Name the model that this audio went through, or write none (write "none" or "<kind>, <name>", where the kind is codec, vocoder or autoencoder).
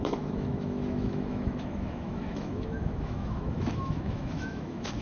autoencoder, DAC-VAE